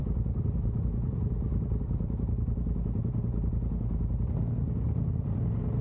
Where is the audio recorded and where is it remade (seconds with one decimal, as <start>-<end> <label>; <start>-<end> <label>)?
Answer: 0.0-3.5 remade; 3.5-5.8 recorded